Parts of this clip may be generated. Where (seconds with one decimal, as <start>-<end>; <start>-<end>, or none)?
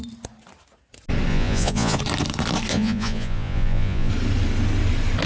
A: 1.3-2.0; 2.7-4.1